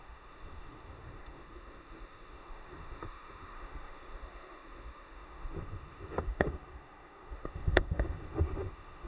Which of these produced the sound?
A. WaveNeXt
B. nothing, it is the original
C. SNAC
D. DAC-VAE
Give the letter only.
D